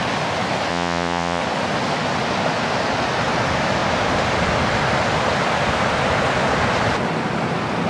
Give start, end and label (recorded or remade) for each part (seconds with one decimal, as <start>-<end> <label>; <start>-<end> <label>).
0.0-0.7 recorded; 0.7-1.4 remade; 1.4-7.9 recorded